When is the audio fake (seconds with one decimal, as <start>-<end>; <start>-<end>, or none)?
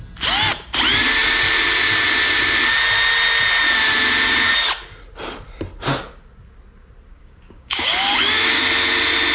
7.1-8.6